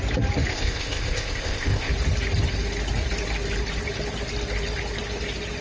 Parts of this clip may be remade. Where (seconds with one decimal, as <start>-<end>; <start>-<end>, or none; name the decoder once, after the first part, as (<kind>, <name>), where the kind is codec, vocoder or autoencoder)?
0.5-1.9 (codec, ZipCodec)